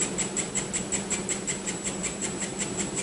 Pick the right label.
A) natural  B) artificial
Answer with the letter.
A